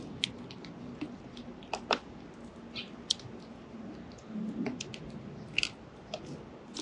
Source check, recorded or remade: recorded